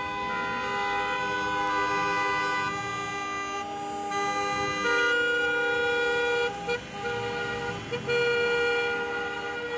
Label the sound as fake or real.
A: real